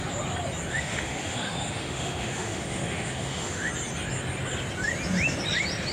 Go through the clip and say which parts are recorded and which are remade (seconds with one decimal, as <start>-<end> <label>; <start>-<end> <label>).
0.0-0.7 recorded; 0.7-3.7 remade; 3.7-5.9 recorded